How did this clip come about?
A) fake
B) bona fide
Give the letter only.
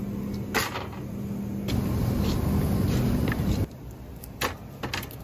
B